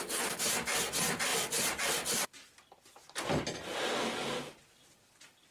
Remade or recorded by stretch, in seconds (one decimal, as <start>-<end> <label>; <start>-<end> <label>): 0.0-5.5 recorded